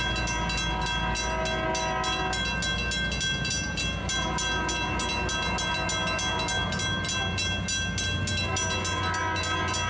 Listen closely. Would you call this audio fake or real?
real